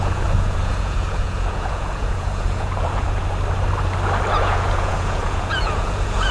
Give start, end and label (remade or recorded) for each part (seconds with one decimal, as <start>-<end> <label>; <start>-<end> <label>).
0.0-3.2 remade; 3.2-4.3 recorded; 4.3-6.3 remade